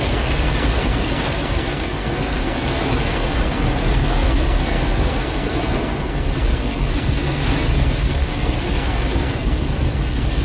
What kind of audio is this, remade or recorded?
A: remade